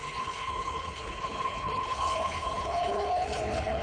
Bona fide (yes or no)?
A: no